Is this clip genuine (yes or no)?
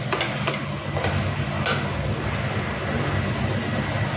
yes